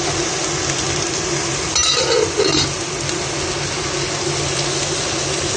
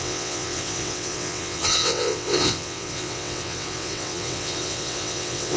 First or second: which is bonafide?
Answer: first